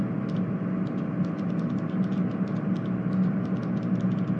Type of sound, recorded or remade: recorded